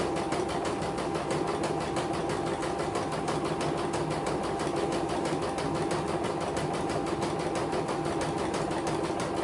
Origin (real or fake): real